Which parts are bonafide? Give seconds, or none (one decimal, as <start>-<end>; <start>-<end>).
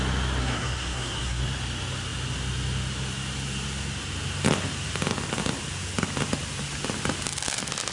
0.0-0.4; 1.4-7.9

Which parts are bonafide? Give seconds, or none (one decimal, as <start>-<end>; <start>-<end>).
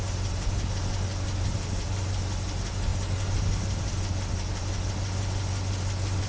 0.0-6.3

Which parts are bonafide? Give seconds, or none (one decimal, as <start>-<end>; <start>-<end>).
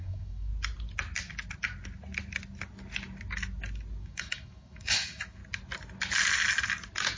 0.5-4.0; 5.4-7.2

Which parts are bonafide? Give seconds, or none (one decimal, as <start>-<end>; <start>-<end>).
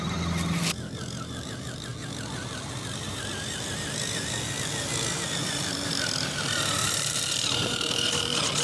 0.0-6.8; 8.1-8.6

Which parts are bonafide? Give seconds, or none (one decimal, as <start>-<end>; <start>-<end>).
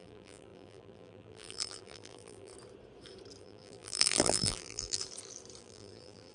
2.5-3.4; 5.0-5.6